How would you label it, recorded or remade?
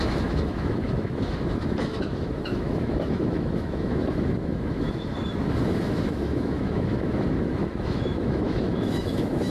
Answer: remade